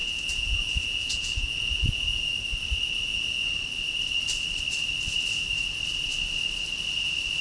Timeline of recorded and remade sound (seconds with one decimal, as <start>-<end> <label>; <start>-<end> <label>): 0.0-2.3 remade; 2.3-3.1 recorded; 3.1-3.6 remade; 3.6-7.4 recorded